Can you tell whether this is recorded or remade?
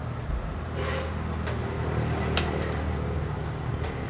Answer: recorded